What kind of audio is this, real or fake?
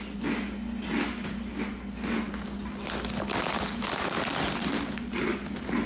real